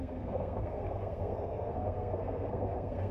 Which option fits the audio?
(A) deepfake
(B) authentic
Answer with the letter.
A